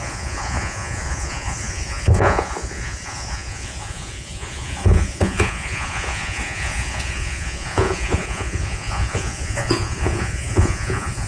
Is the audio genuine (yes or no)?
no